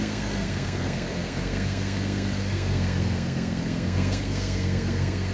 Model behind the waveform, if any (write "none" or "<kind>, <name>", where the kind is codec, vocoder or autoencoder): codec, SNAC